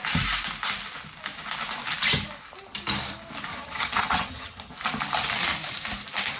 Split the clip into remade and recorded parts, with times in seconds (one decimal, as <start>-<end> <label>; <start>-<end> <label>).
0.0-3.5 recorded; 3.5-4.7 remade; 4.7-6.4 recorded